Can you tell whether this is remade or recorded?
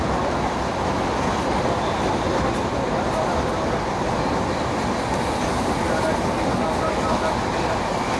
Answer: recorded